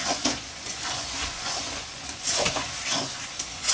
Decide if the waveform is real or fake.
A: fake